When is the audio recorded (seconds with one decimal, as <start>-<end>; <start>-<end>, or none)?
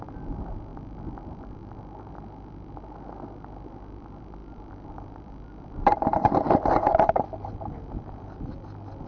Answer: 0.0-4.4; 8.6-9.1